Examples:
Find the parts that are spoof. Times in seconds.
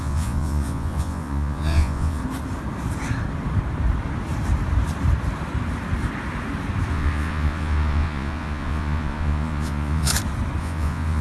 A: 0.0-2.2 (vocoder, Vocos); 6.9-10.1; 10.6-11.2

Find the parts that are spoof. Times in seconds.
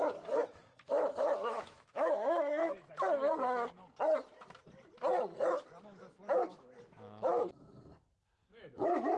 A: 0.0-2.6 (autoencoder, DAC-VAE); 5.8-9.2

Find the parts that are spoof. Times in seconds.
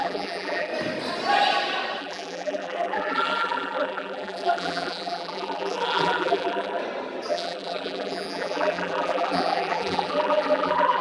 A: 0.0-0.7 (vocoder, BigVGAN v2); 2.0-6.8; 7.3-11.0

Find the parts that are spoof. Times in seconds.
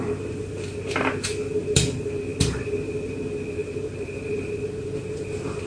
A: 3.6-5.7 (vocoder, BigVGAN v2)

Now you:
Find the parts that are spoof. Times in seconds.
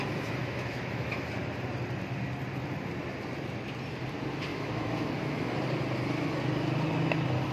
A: 0.4-1.4 (autoencoder, DAC-VAE); 4.5-5.5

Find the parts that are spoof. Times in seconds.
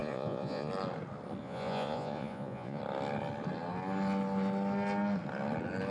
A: 0.0-0.7 (vocoder, Vocos); 1.4-2.8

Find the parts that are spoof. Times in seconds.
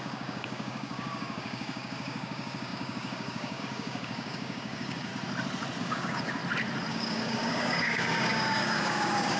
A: 0.0-5.1 (codec, DAC); 5.8-6.4; 6.9-9.4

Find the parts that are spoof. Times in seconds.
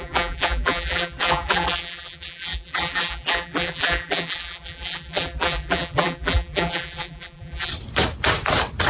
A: 0.0-7.7 (vocoder, BigVGAN v2)